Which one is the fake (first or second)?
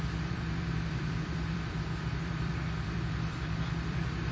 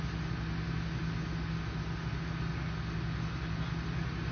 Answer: first